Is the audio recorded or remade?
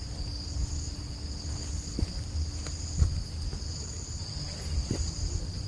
recorded